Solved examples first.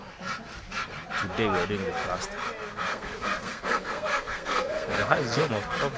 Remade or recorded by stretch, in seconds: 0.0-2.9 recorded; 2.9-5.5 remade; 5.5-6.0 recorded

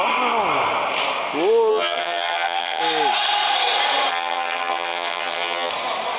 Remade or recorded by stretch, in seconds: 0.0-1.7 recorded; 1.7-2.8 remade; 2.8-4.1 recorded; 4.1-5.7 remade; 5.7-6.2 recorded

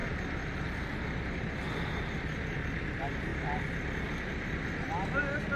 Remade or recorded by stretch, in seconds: 0.0-5.6 recorded

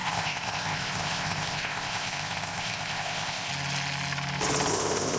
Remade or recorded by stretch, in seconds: 0.0-3.5 remade; 3.5-4.7 recorded; 4.7-5.2 remade

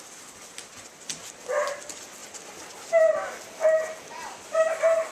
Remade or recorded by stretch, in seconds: 0.0-5.1 recorded

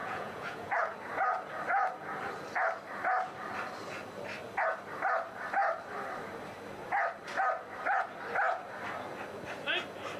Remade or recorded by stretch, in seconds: 0.0-0.7 remade; 0.7-10.2 recorded